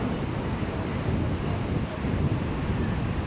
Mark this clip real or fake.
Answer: real